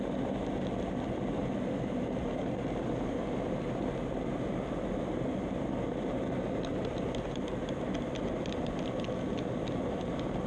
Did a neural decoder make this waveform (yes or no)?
no